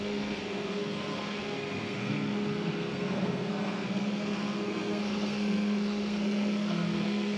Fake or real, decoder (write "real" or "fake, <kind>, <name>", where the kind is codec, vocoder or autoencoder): fake, codec, SNAC